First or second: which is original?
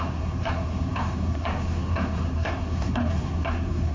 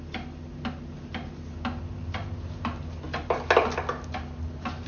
second